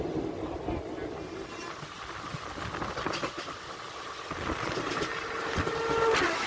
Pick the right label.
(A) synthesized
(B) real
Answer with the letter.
B